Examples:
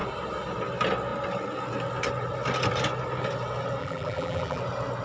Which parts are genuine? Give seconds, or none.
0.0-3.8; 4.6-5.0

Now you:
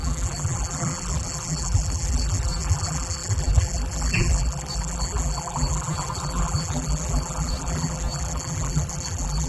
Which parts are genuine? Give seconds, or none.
none

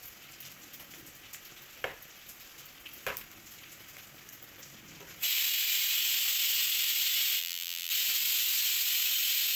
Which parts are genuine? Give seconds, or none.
0.0-7.4; 7.9-9.6

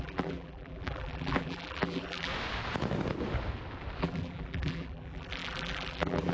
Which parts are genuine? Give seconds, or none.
2.3-4.0

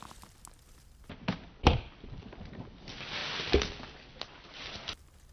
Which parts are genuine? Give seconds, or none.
0.0-5.3

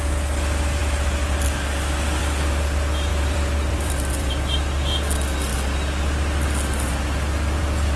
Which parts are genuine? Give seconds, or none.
0.0-3.1; 4.3-8.0